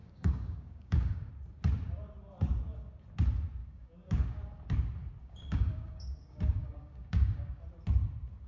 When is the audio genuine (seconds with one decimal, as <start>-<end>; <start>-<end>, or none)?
1.3-3.6; 4.4-5.2; 7.6-8.5

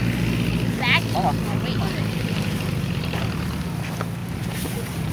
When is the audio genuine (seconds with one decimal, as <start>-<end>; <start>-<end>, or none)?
0.0-1.8; 3.2-4.2

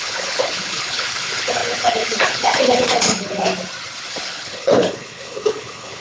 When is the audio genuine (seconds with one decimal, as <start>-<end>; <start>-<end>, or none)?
3.5-4.1